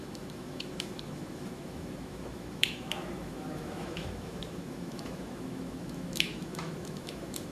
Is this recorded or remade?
remade